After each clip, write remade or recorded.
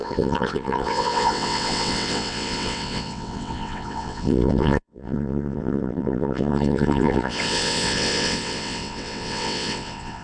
remade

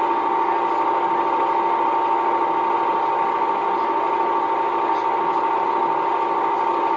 recorded